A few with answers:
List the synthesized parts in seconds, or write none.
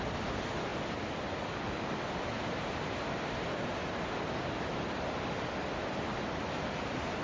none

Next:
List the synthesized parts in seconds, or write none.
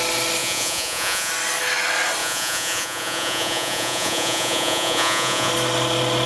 0.4-1.3 (vocoder, Vocos); 2.2-5.5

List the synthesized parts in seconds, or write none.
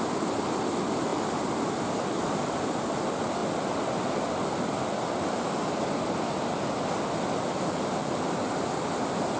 none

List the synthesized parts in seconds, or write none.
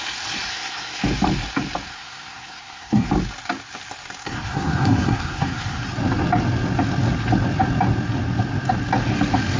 0.5-1.0 (codec, SNAC); 1.9-3.1; 4.2-5.8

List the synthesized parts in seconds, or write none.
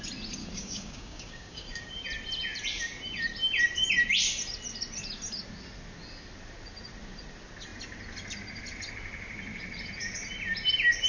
0.4-2.0 (codec, DAC)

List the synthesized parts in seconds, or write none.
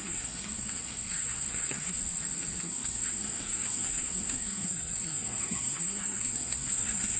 0.0-2.0 (codec, SNAC); 2.6-7.2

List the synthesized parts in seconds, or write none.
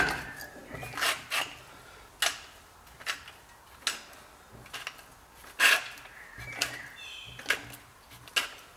none